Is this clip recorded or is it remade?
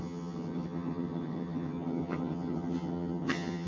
remade